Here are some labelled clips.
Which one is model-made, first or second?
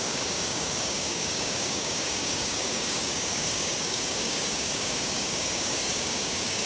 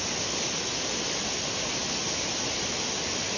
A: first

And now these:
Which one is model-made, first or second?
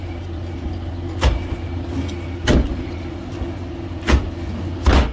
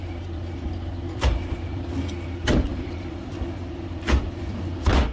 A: second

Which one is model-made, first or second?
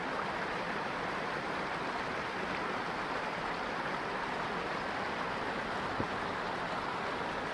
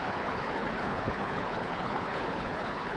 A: second